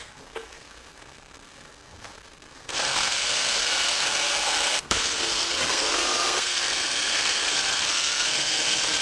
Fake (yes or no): yes